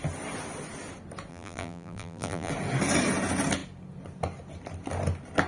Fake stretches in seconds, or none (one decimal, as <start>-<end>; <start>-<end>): 1.3-2.5